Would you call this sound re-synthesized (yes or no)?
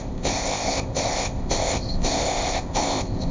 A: yes